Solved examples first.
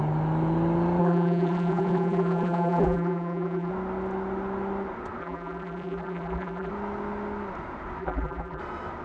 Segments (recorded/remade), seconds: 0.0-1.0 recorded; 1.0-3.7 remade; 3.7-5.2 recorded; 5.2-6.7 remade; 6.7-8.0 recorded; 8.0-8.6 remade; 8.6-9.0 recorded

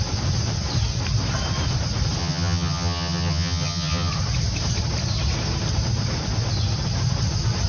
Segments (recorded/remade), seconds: 0.0-2.2 recorded; 2.2-4.1 remade; 4.1-7.7 recorded

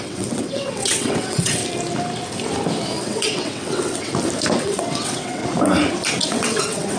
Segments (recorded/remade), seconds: 0.0-1.6 remade; 1.6-3.0 recorded; 3.0-4.1 remade; 4.1-4.6 recorded; 4.6-5.4 remade; 5.4-6.2 recorded; 6.2-7.0 remade

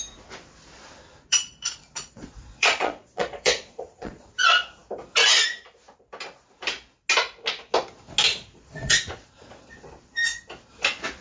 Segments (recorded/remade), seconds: 0.0-1.3 recorded; 1.3-4.3 remade; 4.3-8.3 recorded; 8.3-9.7 remade; 9.7-11.2 recorded

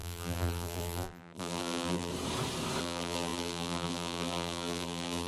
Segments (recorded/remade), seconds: 0.0-2.1 remade; 2.1-2.8 recorded; 2.8-5.3 remade

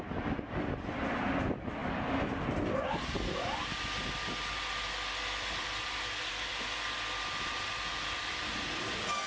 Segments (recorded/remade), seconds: 0.0-9.3 recorded